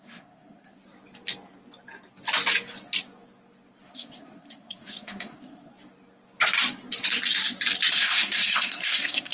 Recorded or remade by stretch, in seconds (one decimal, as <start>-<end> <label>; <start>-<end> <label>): 0.0-0.8 remade; 0.8-3.9 recorded; 3.9-5.7 remade; 5.7-7.9 recorded; 7.9-9.3 remade